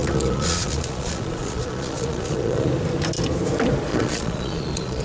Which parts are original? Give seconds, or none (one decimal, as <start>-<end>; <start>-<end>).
2.7-3.9